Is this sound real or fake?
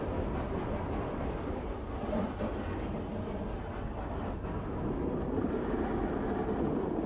real